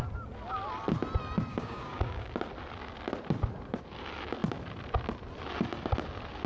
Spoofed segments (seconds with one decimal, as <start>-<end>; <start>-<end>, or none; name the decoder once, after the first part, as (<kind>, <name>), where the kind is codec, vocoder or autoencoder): 1.5-2.3 (codec, DAC)